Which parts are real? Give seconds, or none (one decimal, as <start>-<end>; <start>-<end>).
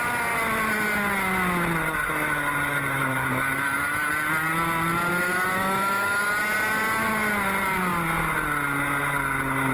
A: 0.0-3.0; 4.1-5.1; 6.3-9.7